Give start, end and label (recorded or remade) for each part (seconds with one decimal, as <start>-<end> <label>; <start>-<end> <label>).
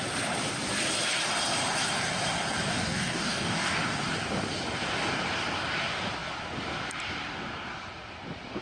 0.0-2.7 recorded; 2.7-3.7 remade; 3.7-8.6 recorded